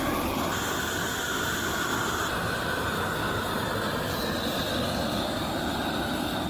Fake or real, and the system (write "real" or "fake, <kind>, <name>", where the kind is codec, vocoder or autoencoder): real